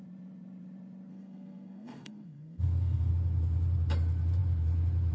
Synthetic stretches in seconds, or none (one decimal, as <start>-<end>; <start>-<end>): 1.1-3.1